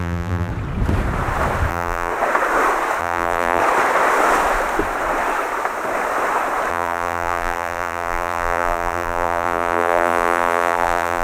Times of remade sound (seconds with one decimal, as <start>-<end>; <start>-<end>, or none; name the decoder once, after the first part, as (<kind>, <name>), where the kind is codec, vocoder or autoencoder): 0.0-0.5 (vocoder, BigVGAN v2); 1.7-2.1; 3.0-3.6; 6.7-11.2